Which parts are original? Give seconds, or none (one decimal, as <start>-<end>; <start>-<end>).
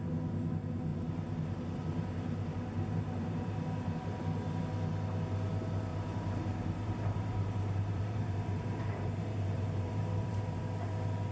0.0-0.9; 4.6-5.9; 10.6-11.3